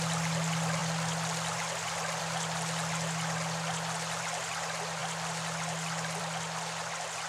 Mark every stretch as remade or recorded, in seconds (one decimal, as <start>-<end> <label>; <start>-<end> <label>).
0.0-7.3 recorded